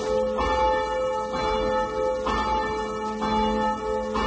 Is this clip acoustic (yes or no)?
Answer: yes